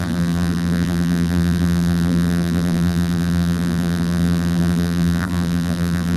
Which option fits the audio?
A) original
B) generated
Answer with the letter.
B